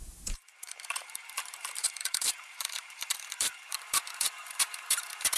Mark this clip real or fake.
fake